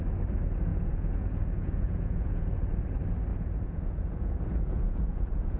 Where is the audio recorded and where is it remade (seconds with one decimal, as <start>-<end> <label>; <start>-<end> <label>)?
0.0-0.7 recorded; 0.7-2.8 remade; 2.8-3.3 recorded; 3.3-5.6 remade